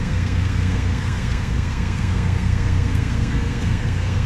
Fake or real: fake